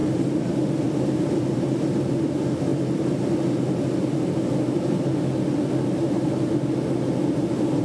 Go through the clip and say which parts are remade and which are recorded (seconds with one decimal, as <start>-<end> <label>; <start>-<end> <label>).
0.0-2.0 remade; 2.0-7.8 recorded